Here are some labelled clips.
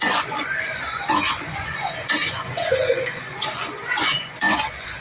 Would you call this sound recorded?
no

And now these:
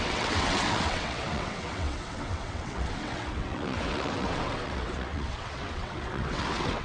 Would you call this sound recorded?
no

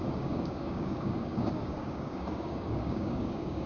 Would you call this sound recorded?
no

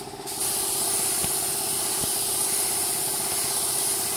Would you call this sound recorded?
yes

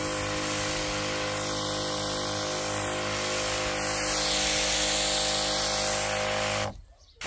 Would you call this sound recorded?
yes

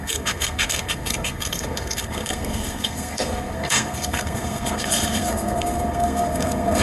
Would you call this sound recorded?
no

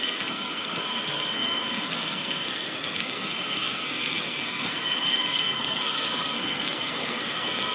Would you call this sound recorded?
no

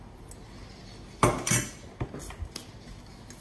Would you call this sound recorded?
yes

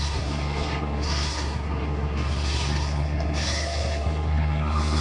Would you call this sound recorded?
no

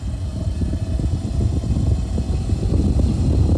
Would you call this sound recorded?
yes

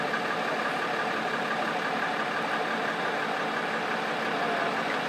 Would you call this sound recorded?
yes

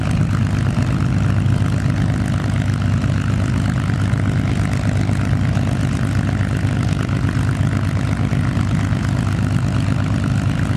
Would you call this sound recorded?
yes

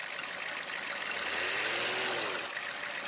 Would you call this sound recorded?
yes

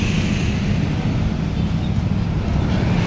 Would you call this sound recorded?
yes